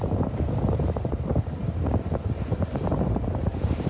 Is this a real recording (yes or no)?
no